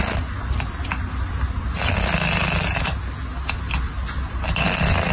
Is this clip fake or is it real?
real